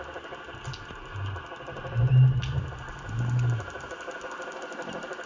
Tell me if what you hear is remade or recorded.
recorded